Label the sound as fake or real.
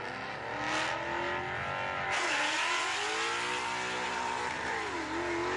real